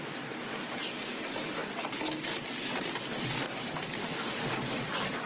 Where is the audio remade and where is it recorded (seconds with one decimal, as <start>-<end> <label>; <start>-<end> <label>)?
0.0-4.0 recorded; 4.0-4.5 remade; 4.5-5.3 recorded